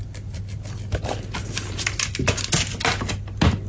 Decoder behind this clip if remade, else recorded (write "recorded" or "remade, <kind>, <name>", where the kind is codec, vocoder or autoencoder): recorded